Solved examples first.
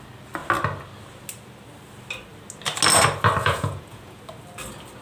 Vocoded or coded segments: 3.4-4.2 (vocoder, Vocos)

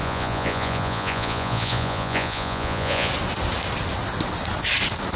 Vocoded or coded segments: 0.0-3.1 (vocoder, Vocos)